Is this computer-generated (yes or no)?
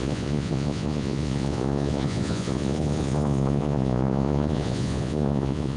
yes